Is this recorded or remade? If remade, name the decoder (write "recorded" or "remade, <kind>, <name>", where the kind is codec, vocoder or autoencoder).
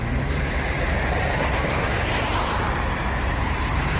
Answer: remade, vocoder, BigVGAN v2